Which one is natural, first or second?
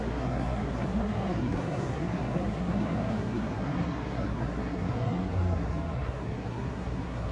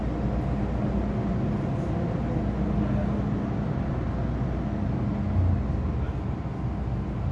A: second